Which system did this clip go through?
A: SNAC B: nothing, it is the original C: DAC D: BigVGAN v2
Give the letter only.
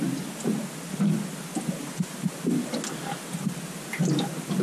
B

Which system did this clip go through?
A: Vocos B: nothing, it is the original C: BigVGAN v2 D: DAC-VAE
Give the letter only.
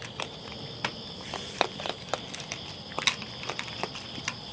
C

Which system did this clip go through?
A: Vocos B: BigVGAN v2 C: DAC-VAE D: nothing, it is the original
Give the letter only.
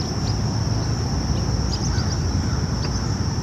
D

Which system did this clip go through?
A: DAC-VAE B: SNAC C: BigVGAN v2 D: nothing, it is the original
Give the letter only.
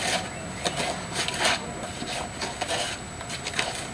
D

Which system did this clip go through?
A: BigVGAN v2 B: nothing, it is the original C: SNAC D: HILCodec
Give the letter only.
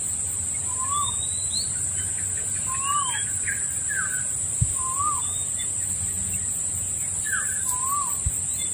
B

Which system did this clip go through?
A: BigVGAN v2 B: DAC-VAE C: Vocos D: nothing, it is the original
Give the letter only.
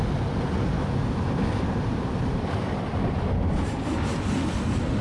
D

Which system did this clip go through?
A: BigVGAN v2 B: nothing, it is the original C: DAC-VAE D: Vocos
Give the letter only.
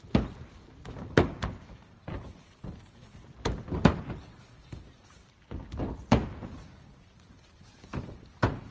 B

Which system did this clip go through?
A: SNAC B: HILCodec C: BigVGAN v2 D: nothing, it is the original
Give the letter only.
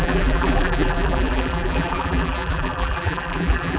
C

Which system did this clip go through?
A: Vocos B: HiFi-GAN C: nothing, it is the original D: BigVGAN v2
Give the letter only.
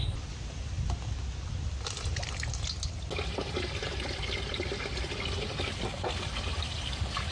C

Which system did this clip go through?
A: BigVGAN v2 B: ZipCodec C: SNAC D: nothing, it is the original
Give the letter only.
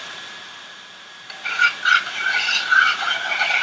A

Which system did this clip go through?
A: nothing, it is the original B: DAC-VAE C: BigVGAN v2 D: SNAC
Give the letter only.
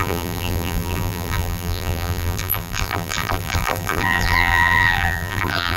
C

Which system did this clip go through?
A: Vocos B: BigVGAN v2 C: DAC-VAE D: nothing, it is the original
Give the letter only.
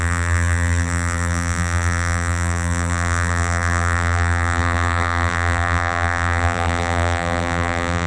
B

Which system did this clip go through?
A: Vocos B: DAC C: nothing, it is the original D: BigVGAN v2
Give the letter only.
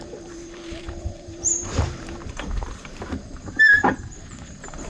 D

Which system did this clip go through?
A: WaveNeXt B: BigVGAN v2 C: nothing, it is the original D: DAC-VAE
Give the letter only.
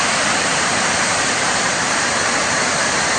B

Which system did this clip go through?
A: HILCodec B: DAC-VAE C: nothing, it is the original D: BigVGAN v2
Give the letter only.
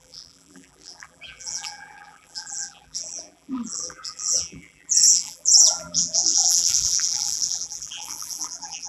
D